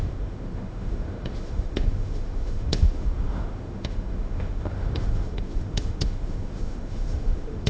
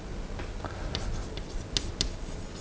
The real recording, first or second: second